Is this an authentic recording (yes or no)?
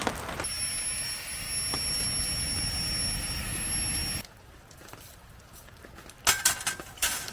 yes